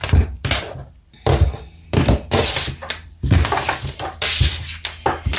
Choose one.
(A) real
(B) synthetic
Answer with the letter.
A